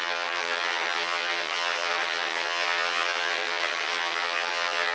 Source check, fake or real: fake